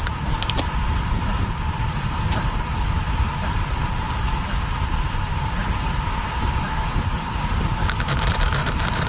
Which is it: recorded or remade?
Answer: remade